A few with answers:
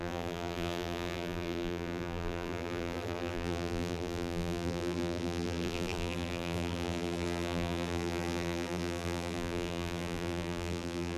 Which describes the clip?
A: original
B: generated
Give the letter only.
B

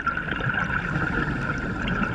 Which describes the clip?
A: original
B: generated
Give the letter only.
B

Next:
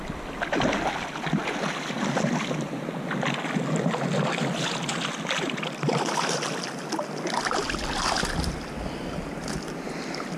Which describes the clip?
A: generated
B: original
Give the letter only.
B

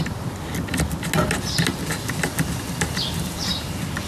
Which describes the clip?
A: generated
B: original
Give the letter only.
B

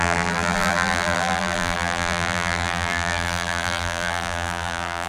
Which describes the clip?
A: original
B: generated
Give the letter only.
B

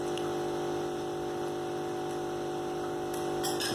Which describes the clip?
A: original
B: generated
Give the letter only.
B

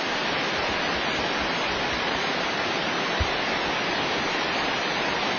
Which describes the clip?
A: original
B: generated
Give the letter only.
A